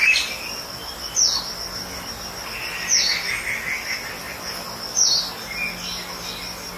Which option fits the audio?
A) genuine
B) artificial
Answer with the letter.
A